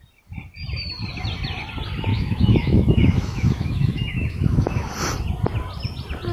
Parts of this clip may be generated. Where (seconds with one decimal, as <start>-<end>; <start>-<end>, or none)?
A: 2.1-4.9